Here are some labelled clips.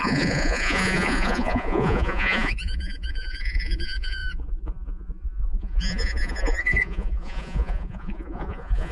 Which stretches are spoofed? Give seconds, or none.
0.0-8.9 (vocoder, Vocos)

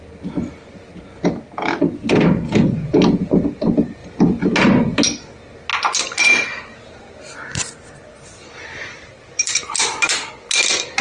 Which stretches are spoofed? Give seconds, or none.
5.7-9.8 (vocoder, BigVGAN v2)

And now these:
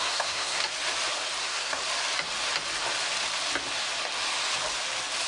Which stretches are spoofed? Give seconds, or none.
0.0-0.6 (codec, SNAC); 1.4-1.8

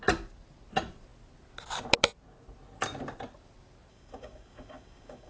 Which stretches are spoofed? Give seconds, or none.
3.9-5.3 (codec, DAC)

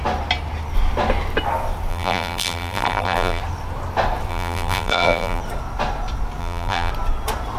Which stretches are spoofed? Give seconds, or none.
1.9-3.4 (vocoder, BigVGAN v2); 4.3-5.4; 6.4-6.9

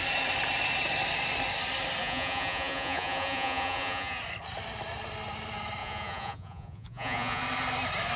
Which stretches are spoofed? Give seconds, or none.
2.0-4.2 (vocoder, Vocos); 5.8-7.4